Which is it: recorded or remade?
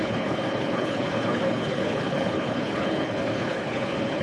remade